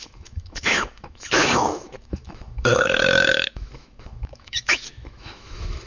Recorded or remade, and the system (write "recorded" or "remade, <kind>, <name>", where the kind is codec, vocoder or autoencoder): remade, autoencoder, DAC-VAE